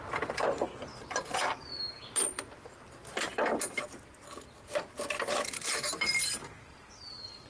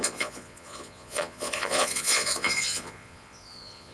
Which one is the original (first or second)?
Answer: first